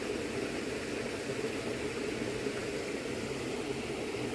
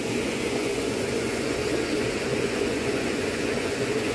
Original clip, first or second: first